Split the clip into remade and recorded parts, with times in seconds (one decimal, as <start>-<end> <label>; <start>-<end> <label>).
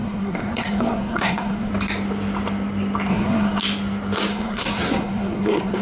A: 0.0-1.7 remade; 1.7-3.1 recorded; 3.1-3.6 remade; 3.6-4.3 recorded; 4.3-5.8 remade